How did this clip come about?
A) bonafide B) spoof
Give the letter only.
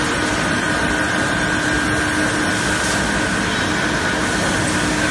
A